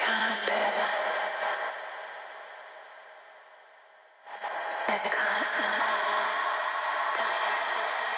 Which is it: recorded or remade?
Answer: recorded